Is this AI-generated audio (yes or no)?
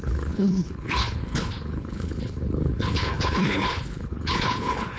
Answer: yes